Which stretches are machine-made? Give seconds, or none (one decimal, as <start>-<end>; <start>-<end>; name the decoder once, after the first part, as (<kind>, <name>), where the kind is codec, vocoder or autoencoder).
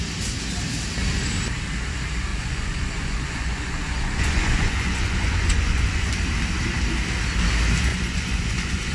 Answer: 2.3-6.1 (vocoder, Vocos); 7.9-8.9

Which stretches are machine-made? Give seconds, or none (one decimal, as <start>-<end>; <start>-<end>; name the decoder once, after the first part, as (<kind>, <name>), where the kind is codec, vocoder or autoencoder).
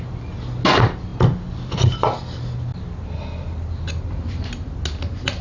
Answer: none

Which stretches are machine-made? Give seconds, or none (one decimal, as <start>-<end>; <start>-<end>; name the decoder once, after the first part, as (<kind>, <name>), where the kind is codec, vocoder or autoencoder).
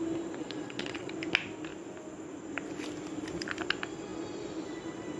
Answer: 0.4-1.1 (vocoder, Vocos)